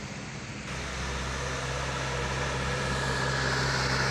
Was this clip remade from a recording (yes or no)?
no